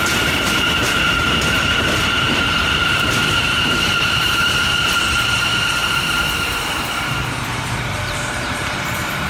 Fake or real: fake